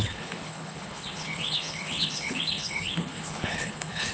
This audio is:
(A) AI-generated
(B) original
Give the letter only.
A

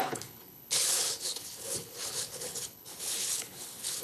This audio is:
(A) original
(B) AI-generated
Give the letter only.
B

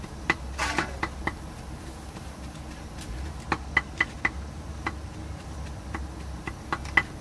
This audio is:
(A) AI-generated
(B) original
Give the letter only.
B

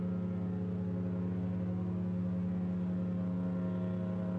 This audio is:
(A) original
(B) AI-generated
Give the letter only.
A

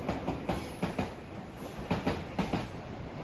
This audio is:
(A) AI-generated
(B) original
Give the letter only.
B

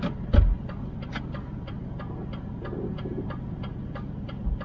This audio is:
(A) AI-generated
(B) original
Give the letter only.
B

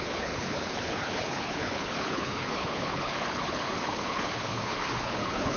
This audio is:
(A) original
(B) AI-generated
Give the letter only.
B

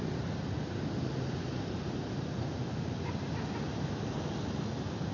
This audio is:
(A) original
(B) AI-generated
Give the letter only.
A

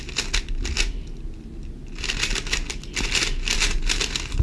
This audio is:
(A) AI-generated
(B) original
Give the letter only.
B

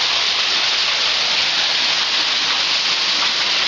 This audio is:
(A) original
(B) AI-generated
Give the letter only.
A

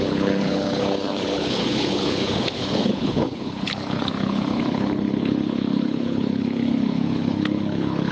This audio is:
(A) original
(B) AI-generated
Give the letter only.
B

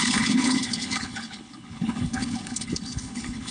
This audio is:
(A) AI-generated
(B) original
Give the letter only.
A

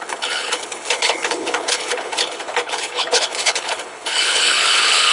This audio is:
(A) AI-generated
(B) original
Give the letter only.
A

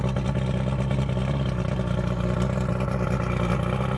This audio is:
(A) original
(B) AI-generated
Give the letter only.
A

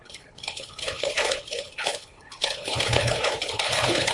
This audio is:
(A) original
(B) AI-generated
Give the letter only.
B